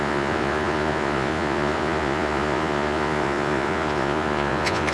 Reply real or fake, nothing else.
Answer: fake